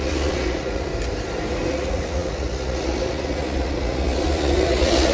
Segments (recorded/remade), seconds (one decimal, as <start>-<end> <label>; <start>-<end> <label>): 0.0-0.9 remade; 0.9-1.7 recorded; 1.7-5.1 remade